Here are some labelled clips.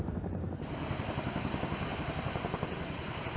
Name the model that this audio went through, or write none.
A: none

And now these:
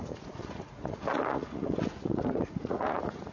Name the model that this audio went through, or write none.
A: vocoder, Vocos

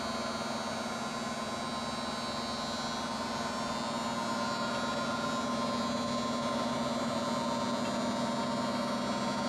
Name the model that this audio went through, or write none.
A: none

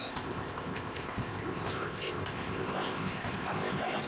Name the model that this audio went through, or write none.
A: codec, ZipCodec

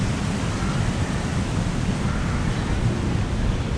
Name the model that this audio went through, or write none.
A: none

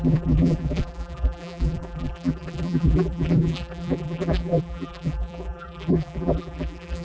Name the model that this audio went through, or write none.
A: vocoder, BigVGAN v2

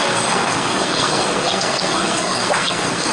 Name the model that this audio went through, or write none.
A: codec, SNAC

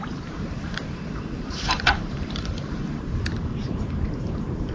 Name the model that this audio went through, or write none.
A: vocoder, BigVGAN v2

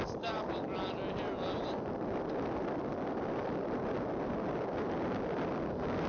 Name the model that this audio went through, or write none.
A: none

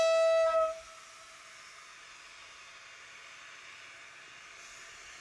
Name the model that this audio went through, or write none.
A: none